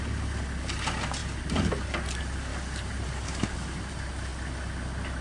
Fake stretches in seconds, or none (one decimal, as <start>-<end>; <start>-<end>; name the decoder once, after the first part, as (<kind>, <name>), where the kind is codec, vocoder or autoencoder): 2.5-3.9 (vocoder, BigVGAN v2)